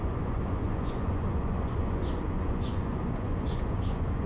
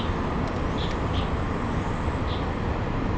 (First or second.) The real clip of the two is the second